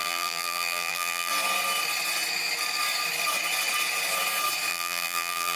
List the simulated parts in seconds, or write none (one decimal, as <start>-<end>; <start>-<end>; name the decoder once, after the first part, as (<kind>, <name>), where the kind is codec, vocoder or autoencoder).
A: 0.0-1.3 (vocoder, BigVGAN v2); 4.7-5.6